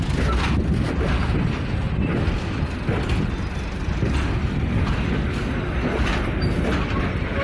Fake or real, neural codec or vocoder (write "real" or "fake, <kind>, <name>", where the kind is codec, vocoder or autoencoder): real